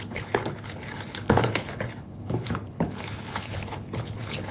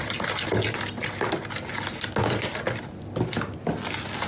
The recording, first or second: second